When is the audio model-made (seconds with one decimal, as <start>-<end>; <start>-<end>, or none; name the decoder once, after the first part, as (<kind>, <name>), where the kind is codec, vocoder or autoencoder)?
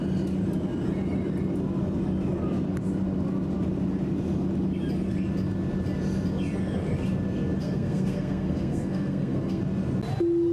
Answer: 7.6-9.6 (codec, SNAC)